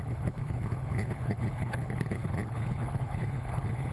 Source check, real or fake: fake